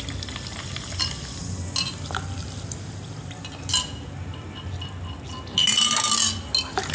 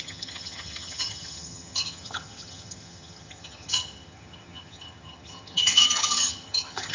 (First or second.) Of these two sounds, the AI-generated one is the second